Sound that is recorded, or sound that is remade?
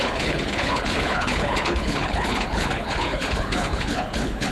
remade